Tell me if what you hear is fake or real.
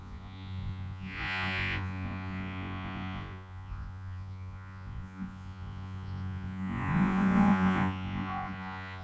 fake